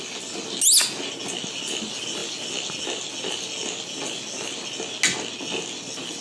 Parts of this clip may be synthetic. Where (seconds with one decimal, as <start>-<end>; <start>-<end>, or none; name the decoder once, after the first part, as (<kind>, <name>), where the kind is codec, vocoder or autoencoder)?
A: none

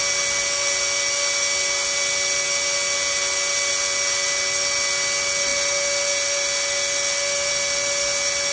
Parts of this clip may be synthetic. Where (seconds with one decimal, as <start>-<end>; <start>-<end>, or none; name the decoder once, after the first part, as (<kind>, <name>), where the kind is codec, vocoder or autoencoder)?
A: none

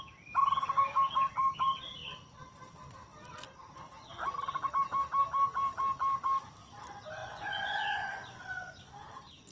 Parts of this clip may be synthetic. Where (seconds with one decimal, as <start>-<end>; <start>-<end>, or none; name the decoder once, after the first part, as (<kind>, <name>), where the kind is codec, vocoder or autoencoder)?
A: 7.2-8.8 (vocoder, Vocos)